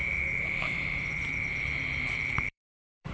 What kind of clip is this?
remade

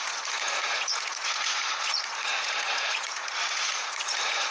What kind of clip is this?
remade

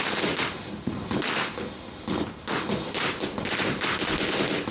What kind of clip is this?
recorded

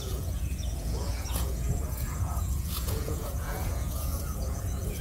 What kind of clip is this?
remade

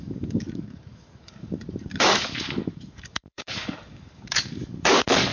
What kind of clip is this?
remade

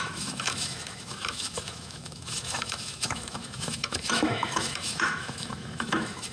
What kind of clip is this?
remade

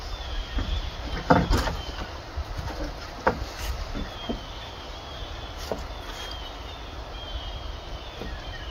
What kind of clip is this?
recorded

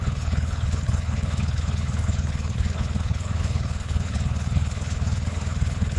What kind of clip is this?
remade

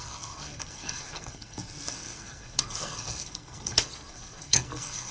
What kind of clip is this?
remade